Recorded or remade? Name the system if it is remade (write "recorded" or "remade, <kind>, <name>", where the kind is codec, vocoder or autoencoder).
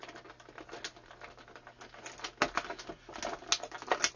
recorded